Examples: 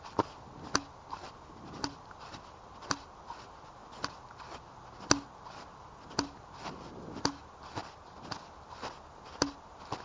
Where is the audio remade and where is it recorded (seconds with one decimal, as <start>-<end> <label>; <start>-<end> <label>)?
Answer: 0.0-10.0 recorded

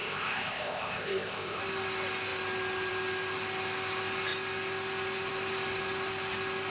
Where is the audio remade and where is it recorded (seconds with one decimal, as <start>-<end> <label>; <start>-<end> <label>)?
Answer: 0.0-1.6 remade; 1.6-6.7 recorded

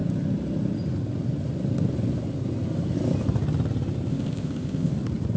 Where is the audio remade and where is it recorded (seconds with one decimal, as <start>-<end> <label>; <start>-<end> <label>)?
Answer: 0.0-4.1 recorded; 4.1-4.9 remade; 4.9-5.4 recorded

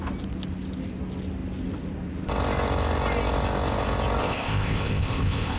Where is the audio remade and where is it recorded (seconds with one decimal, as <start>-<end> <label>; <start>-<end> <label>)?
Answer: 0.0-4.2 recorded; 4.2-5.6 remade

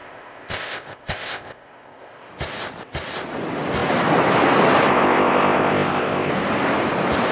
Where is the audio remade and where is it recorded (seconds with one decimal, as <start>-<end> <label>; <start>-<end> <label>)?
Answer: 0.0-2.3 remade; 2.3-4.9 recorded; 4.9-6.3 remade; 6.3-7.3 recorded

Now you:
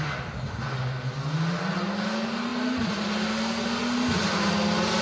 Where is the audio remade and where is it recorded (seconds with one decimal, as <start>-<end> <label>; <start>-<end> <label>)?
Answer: 0.0-5.0 recorded

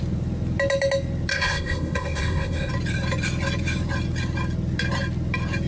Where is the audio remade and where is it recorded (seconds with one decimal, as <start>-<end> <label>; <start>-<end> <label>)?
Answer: 0.0-1.3 recorded; 1.3-2.7 remade; 2.7-5.7 recorded

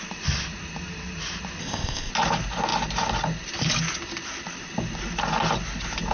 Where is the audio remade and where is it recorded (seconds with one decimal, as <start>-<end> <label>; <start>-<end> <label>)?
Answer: 0.0-1.6 recorded; 1.6-2.1 remade; 2.1-6.1 recorded